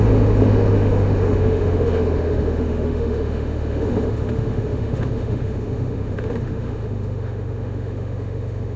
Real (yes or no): no